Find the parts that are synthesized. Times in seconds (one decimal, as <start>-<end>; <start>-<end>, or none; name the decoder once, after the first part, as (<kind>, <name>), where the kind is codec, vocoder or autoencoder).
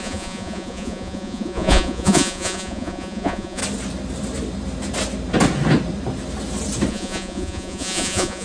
0.0-3.6 (vocoder, Vocos); 6.9-8.4